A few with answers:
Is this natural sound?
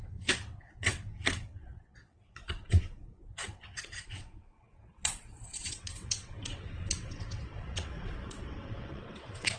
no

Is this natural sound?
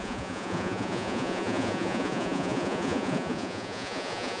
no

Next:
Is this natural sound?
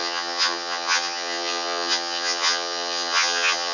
no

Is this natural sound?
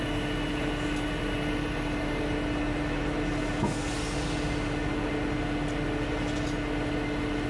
yes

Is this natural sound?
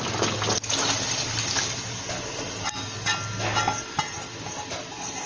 yes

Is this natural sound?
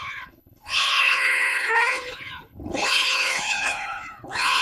no